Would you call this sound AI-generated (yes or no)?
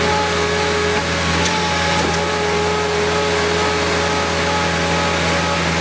no